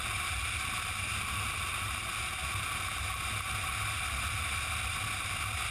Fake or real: real